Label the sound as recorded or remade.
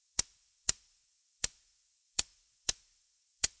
remade